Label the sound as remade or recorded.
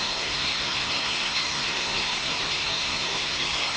remade